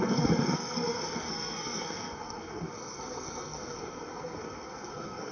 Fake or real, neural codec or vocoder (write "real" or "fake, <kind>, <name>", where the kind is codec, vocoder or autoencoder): fake, codec, SNAC